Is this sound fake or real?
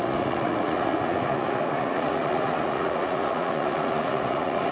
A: fake